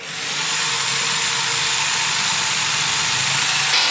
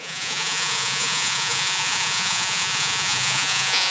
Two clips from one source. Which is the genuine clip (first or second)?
first